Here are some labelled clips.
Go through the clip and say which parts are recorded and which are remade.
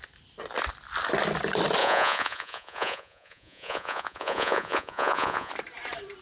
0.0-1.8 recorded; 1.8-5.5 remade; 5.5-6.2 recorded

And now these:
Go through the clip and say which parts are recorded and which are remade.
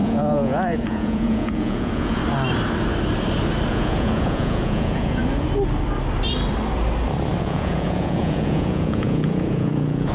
0.0-2.2 remade; 2.2-3.7 recorded; 3.7-5.2 remade; 5.2-7.4 recorded; 7.4-10.1 remade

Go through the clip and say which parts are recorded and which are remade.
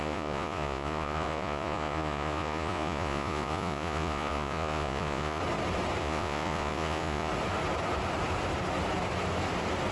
0.0-5.4 remade; 5.4-6.0 recorded; 6.0-7.3 remade; 7.3-9.9 recorded